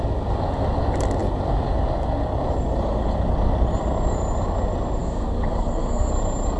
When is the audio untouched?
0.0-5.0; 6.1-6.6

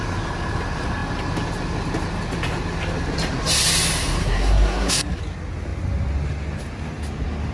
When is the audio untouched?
0.0-4.2; 5.2-7.5

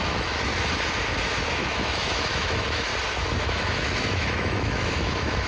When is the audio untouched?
0.5-1.5; 2.9-3.4

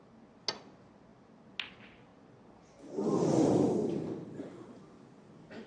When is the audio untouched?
0.0-5.7